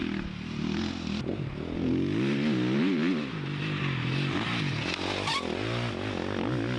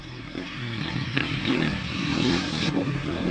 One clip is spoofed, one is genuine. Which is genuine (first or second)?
first